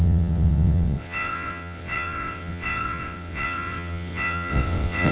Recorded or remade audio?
remade